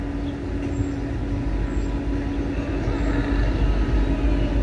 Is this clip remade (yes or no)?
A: no